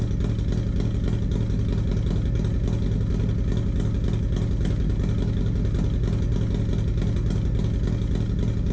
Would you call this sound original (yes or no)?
yes